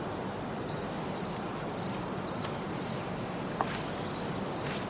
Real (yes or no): yes